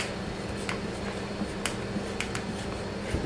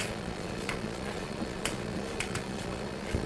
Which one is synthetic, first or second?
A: second